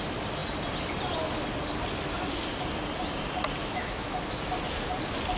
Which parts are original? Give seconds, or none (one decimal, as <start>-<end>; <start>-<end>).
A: 0.0-3.6; 4.2-5.4